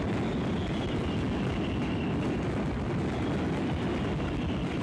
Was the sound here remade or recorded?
recorded